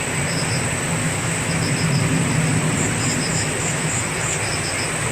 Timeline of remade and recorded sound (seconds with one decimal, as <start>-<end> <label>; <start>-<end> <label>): 0.0-1.0 recorded; 1.0-1.5 remade; 1.5-3.3 recorded; 3.3-3.9 remade; 3.9-5.1 recorded